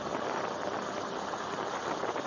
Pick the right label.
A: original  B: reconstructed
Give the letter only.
A